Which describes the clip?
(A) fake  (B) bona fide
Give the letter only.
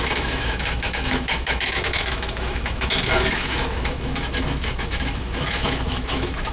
A